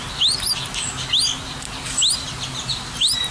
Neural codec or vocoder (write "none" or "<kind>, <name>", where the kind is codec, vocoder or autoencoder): none